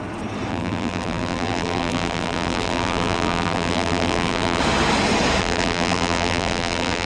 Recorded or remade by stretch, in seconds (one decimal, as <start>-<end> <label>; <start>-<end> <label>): 0.0-0.5 recorded; 0.5-4.6 remade; 4.6-5.4 recorded; 5.4-7.1 remade